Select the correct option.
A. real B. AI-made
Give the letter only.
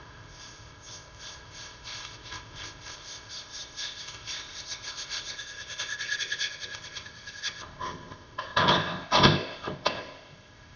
B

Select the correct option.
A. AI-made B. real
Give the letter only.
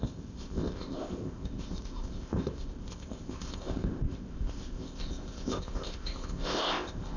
A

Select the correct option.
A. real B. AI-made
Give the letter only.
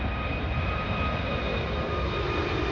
A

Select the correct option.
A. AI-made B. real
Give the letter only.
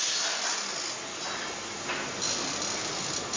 B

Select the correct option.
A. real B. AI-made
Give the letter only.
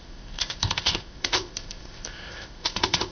B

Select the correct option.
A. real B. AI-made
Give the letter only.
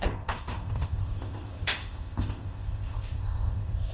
B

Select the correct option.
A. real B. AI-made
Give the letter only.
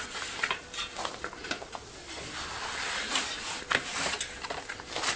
A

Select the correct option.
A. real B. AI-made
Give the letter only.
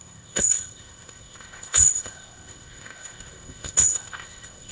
B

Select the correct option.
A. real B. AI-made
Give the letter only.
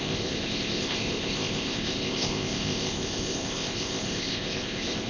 B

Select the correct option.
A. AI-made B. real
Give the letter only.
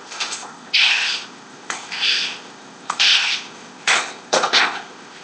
A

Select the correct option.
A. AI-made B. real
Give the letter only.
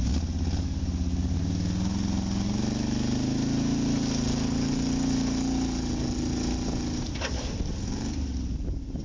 B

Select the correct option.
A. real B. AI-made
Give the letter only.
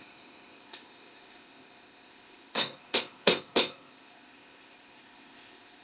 B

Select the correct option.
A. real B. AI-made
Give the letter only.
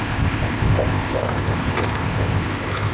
B